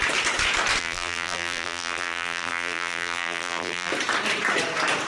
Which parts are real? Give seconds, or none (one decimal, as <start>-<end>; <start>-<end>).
0.0-0.8; 3.9-5.1